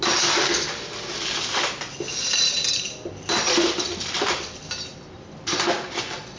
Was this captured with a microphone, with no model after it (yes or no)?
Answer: yes